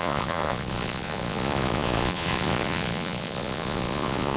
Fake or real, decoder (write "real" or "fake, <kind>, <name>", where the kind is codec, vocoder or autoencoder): fake, vocoder, Vocos